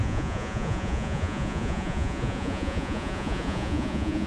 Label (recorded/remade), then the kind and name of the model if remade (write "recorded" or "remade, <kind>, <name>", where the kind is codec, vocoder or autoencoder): remade, vocoder, Vocos